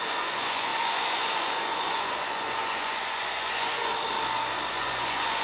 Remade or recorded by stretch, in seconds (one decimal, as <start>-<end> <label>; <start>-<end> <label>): 0.0-3.9 remade; 3.9-4.7 recorded; 4.7-5.4 remade